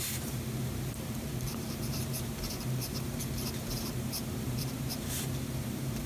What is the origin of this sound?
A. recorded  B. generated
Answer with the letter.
B